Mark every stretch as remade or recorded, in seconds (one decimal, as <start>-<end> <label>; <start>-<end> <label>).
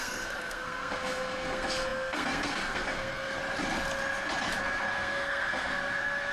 0.0-3.4 remade; 3.4-4.6 recorded; 4.6-6.3 remade